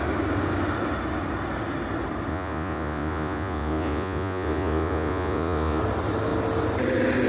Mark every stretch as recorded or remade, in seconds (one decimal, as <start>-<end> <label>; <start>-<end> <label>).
0.0-2.3 recorded; 2.3-5.8 remade; 5.8-7.3 recorded